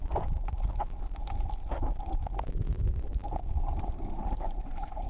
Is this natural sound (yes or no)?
yes